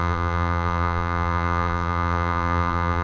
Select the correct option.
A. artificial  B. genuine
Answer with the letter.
A